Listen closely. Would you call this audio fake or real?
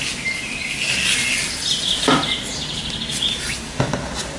real